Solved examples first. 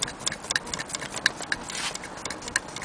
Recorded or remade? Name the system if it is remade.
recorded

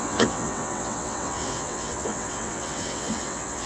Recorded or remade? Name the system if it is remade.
remade, vocoder, WaveNeXt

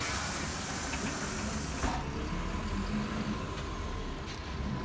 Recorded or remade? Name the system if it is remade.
recorded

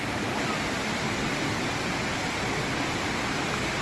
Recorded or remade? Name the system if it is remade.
recorded